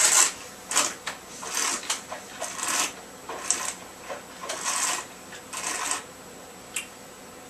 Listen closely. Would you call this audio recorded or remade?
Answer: recorded